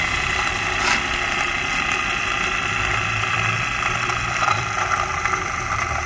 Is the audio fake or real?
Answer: fake